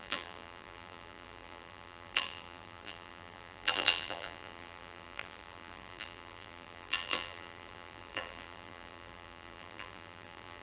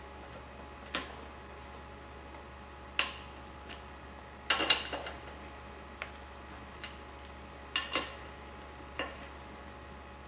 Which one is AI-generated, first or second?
first